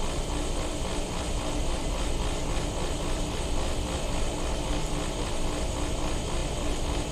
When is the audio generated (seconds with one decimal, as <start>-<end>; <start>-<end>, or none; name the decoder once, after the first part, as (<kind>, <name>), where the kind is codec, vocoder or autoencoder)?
none